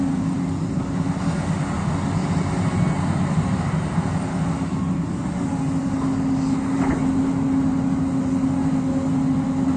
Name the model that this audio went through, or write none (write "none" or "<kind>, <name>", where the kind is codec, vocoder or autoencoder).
none